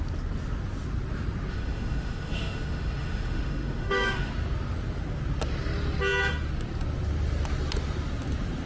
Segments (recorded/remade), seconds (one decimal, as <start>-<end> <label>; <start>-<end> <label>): 0.0-1.5 recorded; 1.5-4.3 remade; 4.3-8.7 recorded